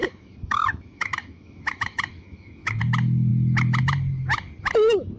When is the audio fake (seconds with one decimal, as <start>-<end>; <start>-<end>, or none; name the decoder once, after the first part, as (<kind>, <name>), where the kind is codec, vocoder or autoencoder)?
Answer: 0.0-2.8 (autoencoder, DAC-VAE)

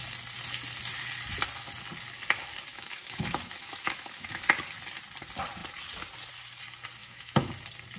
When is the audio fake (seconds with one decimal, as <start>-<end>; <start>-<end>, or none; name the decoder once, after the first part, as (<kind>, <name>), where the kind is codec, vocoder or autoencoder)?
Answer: 2.7-4.4 (autoencoder, DAC-VAE); 7.0-7.5

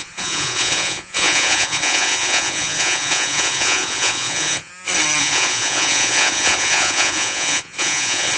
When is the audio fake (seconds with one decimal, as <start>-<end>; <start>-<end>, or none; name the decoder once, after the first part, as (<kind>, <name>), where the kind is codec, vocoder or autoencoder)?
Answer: 0.0-4.7 (vocoder, Vocos); 5.2-8.4

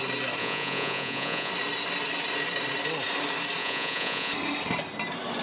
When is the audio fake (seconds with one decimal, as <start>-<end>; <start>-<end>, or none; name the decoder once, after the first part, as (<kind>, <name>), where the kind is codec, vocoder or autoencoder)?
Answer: 0.4-1.5 (vocoder, Vocos); 3.6-4.3